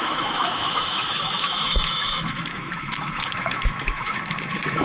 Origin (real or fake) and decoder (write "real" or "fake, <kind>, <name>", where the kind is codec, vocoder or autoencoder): fake, autoencoder, DAC-VAE